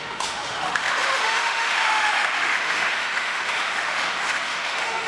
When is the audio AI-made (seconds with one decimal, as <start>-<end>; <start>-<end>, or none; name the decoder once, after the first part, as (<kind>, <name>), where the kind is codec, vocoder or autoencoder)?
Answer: 0.0-5.1 (autoencoder, DAC-VAE)